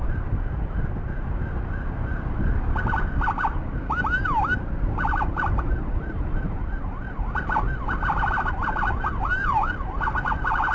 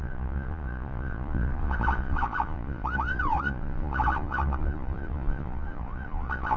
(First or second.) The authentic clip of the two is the first